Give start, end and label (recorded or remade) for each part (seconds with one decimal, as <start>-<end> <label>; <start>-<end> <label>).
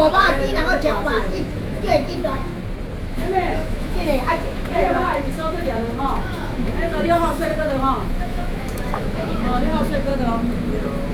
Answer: 0.0-2.5 remade; 2.5-3.0 recorded; 3.0-7.5 remade; 7.5-8.2 recorded; 8.2-10.1 remade; 10.1-11.1 recorded